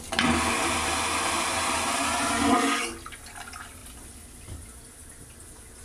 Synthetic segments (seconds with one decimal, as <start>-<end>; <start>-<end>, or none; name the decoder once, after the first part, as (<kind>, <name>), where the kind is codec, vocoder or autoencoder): 3.8-5.2 (vocoder, BigVGAN v2)